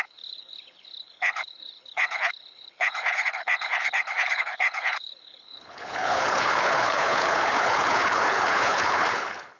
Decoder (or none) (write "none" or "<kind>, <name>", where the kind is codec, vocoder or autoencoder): codec, HILCodec